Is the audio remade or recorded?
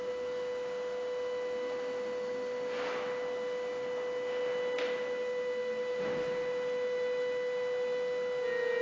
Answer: recorded